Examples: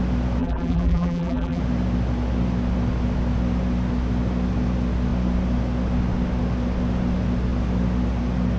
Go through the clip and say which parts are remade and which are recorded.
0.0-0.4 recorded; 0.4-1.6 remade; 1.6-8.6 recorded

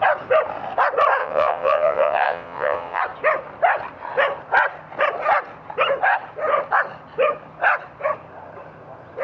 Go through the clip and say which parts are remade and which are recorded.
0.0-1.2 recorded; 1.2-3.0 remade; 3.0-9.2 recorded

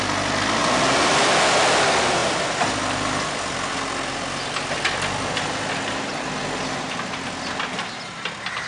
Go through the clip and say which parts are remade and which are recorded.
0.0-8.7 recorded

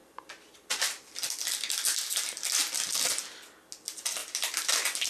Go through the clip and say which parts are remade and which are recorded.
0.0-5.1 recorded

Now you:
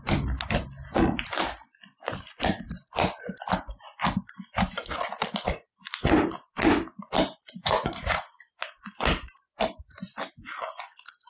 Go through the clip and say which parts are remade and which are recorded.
0.0-7.6 recorded; 7.6-8.4 remade; 8.4-11.3 recorded